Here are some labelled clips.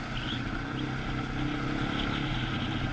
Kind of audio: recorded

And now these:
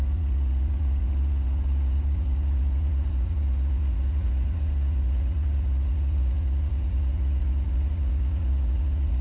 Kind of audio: remade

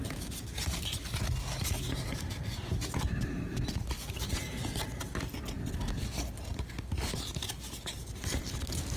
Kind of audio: recorded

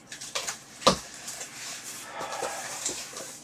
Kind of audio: remade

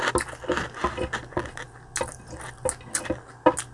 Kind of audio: recorded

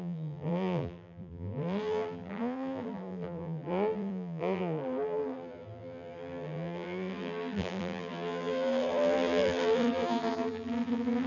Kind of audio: remade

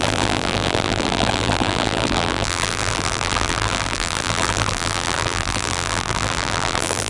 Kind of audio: remade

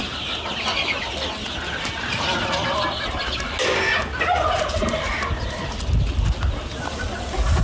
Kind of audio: recorded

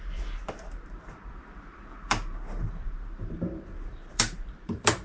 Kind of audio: remade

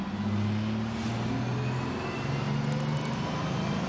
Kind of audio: recorded